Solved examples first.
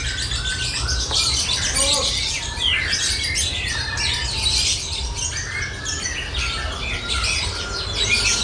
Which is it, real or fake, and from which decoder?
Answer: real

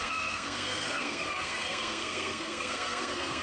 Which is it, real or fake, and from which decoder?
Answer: fake, codec, SNAC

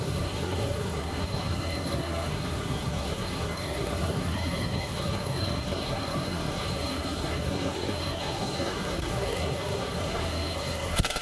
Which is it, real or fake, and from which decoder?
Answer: fake, codec, SNAC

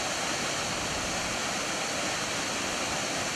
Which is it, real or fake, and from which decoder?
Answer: real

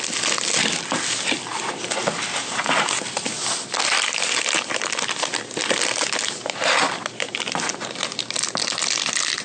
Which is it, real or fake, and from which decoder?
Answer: real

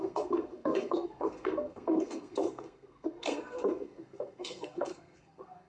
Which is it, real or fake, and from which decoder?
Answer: fake, codec, SNAC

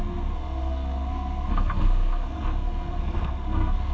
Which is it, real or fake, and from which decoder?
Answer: fake, codec, SNAC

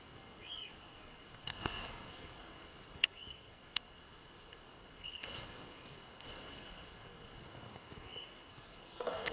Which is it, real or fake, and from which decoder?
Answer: fake, codec, SNAC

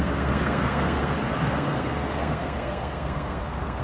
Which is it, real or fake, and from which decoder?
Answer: fake, codec, SNAC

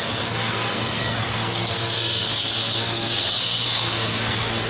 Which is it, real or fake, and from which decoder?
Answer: fake, codec, SNAC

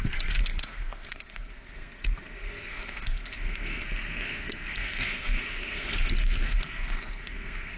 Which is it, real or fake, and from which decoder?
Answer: fake, codec, SNAC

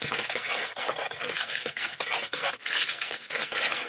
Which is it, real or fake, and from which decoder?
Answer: fake, codec, SNAC